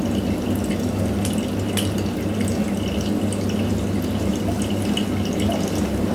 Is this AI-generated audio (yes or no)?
no